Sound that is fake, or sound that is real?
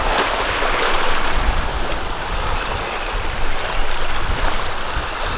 real